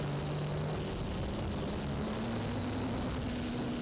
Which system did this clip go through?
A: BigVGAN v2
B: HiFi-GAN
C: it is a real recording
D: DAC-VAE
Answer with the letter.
C